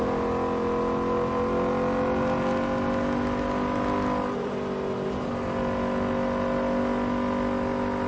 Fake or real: real